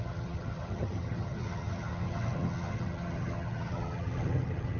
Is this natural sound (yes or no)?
no